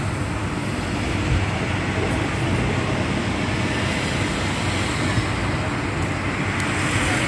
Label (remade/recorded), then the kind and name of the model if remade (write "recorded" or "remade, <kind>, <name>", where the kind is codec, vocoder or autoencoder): recorded